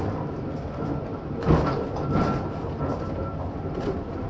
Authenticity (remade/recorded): recorded